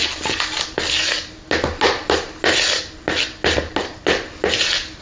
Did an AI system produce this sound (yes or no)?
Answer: no